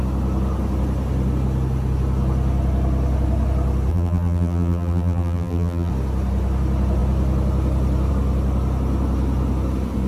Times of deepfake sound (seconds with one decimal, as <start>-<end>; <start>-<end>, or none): 3.9-5.9